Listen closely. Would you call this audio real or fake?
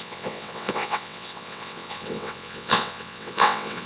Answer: fake